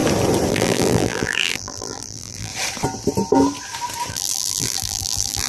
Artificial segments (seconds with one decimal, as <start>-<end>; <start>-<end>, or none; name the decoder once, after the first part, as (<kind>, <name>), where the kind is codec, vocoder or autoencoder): 0.5-2.5 (vocoder, BigVGAN v2); 4.1-5.5